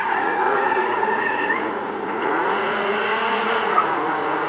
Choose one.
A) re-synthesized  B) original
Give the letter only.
A